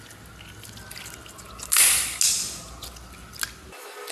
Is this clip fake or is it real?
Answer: real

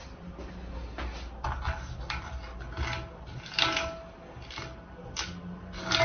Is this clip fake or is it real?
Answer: real